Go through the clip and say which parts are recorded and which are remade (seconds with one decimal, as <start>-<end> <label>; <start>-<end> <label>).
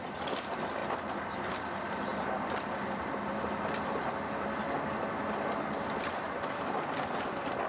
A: 0.0-0.8 remade; 0.8-1.5 recorded; 1.5-2.1 remade; 2.1-6.0 recorded; 6.0-7.7 remade